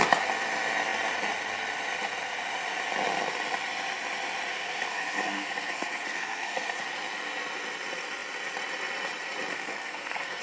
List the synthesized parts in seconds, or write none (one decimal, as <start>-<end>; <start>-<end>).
4.5-6.8; 9.5-10.4